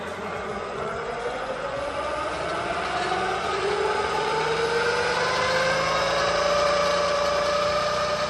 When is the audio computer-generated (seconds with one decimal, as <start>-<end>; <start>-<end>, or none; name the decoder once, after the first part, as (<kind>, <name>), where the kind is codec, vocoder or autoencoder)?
0.0-4.3 (vocoder, Vocos)